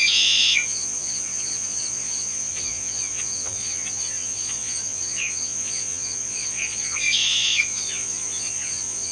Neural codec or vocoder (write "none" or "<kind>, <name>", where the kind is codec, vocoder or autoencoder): vocoder, Vocos